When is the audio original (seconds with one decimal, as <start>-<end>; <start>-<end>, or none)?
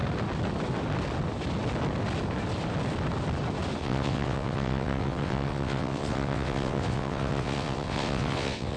0.0-3.8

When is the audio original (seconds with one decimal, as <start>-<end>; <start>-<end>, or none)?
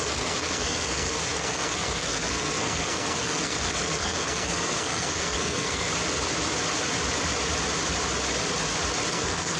5.9-9.1